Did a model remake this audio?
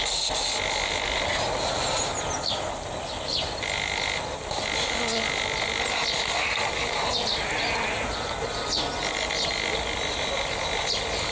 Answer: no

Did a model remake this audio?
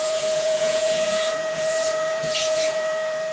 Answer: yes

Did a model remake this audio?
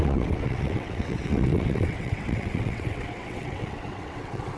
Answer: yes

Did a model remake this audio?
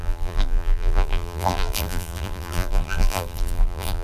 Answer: yes